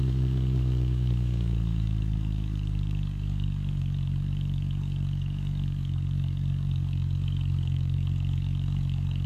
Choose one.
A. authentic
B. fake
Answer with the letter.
B